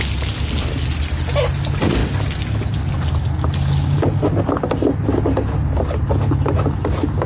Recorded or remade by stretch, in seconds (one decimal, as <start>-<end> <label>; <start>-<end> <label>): 0.0-7.3 recorded